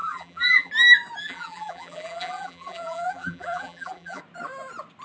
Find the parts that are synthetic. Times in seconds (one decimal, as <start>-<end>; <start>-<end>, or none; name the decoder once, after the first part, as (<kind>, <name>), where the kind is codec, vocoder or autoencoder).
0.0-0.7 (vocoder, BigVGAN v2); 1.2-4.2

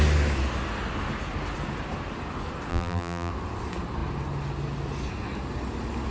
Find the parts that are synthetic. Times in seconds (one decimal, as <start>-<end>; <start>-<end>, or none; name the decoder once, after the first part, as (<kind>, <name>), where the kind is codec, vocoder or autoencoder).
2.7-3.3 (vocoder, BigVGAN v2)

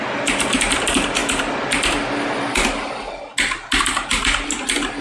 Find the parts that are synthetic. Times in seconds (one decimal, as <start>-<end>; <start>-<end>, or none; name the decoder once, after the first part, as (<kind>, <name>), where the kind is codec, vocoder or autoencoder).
none

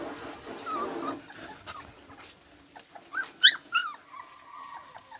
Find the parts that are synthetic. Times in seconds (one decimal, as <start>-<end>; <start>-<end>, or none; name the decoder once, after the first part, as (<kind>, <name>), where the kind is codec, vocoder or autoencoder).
none